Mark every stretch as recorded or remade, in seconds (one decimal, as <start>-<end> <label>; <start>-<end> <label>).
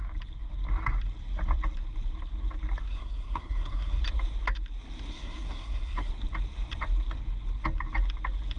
0.0-2.9 recorded; 2.9-4.0 remade; 4.0-5.1 recorded; 5.1-6.1 remade; 6.1-8.6 recorded